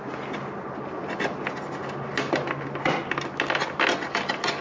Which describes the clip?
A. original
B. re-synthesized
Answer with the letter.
A